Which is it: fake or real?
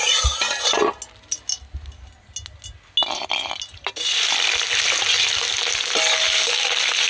real